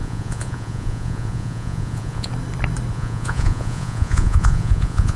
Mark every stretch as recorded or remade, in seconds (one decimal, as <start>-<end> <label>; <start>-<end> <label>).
0.0-2.3 remade; 2.3-2.9 recorded; 2.9-5.2 remade